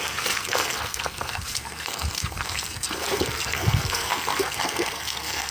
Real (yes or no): no